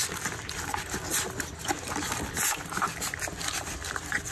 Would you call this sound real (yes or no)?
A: yes